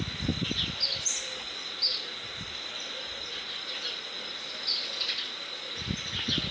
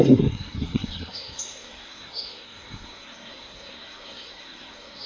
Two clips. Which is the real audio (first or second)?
first